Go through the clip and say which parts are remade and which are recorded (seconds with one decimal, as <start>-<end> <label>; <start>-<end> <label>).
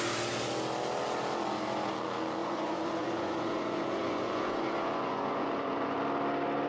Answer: 0.0-2.4 recorded; 2.4-6.0 remade; 6.0-6.7 recorded